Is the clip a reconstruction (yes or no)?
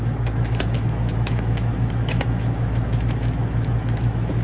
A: yes